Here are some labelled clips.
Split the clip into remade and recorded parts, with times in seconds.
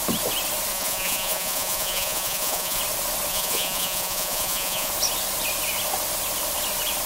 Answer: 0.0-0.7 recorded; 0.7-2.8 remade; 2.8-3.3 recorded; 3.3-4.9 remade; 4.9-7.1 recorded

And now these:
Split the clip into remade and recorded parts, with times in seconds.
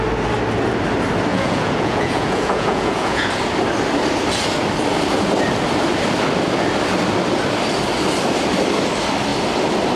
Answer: 0.0-1.3 recorded; 1.3-3.3 remade; 3.3-10.0 recorded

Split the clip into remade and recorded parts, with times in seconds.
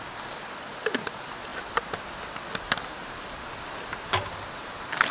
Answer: 0.0-5.1 recorded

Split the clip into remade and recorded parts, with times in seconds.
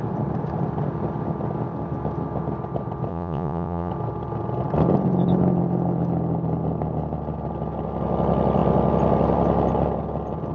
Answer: 0.0-3.1 recorded; 3.1-3.9 remade; 3.9-10.5 recorded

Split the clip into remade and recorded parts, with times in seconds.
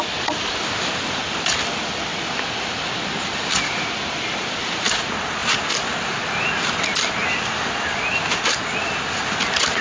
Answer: 0.0-9.8 recorded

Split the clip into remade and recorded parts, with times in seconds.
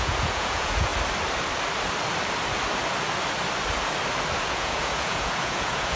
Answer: 0.0-0.9 remade; 0.9-4.5 recorded; 4.5-6.0 remade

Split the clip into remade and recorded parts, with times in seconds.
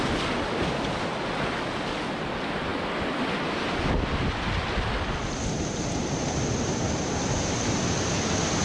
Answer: 0.0-8.6 recorded